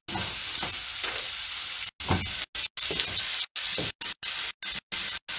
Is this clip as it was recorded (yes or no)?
yes